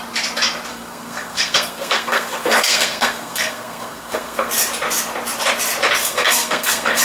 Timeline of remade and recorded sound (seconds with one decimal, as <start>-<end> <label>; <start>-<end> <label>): 0.0-0.7 recorded; 0.7-4.5 remade; 4.5-6.0 recorded; 6.0-7.0 remade